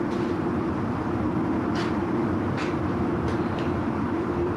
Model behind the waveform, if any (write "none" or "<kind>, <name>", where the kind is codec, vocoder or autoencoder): vocoder, BigVGAN v2